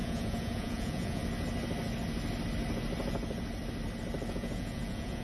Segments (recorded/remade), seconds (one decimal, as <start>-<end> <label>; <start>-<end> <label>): 0.0-1.2 remade; 1.2-4.3 recorded; 4.3-5.2 remade